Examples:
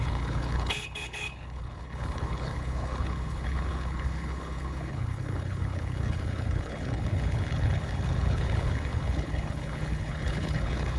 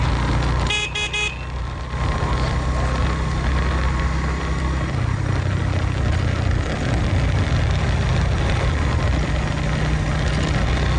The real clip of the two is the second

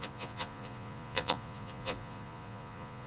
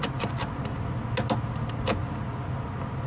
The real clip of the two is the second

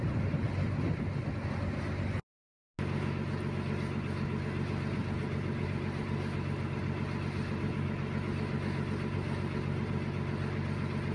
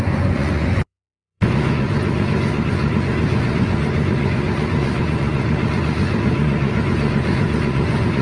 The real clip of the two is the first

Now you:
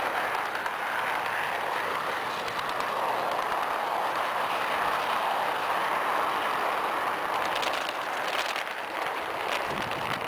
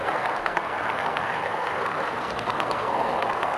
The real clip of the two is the first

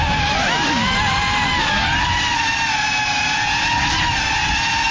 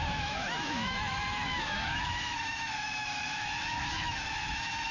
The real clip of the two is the first